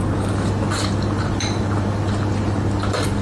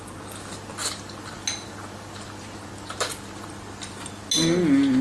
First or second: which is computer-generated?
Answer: first